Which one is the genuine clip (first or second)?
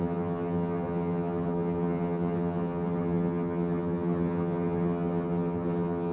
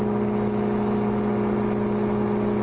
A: second